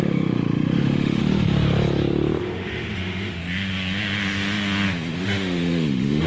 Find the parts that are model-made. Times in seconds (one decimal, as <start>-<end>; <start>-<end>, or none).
0.0-1.2; 2.4-3.4; 5.1-6.3